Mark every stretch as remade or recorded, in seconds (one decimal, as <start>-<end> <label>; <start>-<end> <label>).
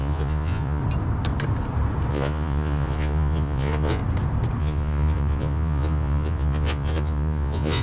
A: 0.0-0.8 remade; 0.8-2.1 recorded; 2.1-4.0 remade; 4.0-4.6 recorded; 4.6-7.8 remade